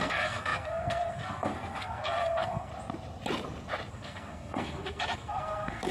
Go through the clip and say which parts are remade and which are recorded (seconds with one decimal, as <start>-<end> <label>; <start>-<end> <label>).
0.0-2.7 remade; 2.7-3.9 recorded; 3.9-5.9 remade